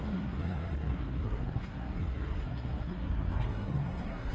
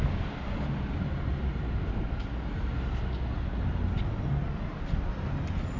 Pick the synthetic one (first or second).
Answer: first